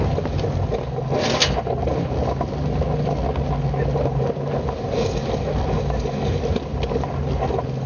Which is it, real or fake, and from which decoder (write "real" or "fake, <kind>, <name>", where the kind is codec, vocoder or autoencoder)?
real